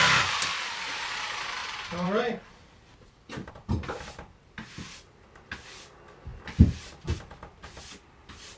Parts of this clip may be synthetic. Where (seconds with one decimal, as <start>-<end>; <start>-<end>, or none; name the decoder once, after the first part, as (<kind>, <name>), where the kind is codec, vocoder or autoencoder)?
1.6-3.5 (vocoder, BigVGAN v2); 6.3-7.8